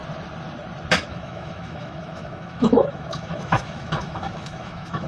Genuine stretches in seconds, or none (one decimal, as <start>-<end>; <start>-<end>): 0.0-0.9